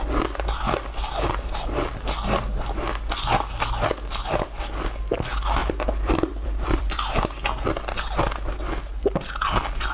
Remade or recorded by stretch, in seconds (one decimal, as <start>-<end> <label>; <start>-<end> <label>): 0.0-5.6 recorded; 5.6-6.9 remade; 6.9-9.9 recorded